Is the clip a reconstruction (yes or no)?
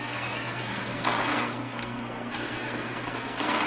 yes